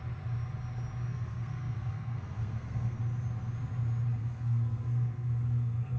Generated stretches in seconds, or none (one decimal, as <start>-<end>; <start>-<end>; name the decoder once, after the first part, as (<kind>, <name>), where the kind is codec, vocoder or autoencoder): 1.1-3.0 (codec, SNAC); 4.2-6.0